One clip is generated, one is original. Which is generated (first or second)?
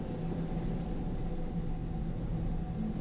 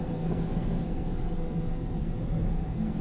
second